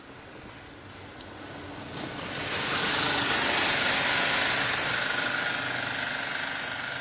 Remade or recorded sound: recorded